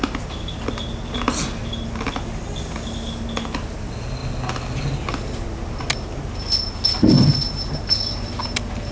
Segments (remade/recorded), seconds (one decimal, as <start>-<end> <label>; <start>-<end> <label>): 0.0-8.9 recorded